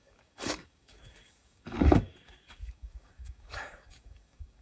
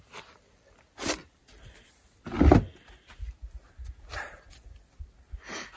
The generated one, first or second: first